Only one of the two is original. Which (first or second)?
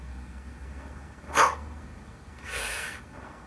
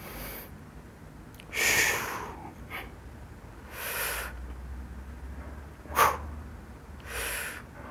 second